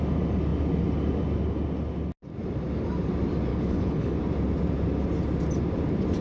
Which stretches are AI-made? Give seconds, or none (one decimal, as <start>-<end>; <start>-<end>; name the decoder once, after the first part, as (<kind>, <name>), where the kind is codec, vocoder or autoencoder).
3.5-4.2 (codec, HILCodec)